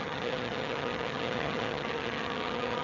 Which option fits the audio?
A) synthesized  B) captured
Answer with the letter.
A